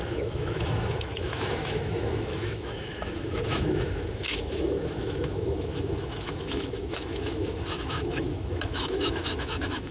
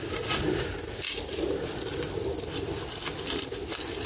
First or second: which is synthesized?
first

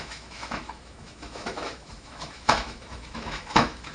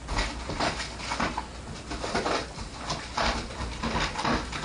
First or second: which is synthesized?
first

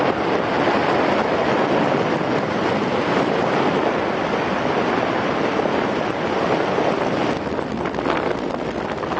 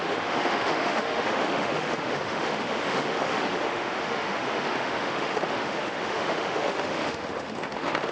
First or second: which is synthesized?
second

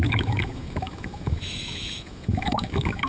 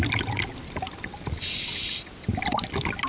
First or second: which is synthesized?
first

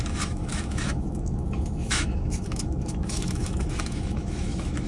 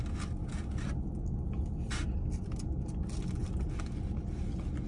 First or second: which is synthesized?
first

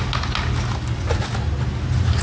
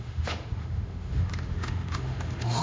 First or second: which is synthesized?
second